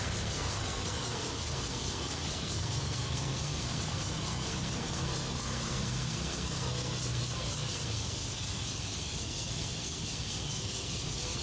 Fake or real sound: fake